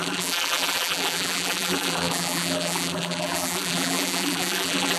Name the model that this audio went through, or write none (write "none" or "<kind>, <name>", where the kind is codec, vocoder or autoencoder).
vocoder, BigVGAN v2